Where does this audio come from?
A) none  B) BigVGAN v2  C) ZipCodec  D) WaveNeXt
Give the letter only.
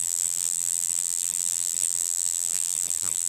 B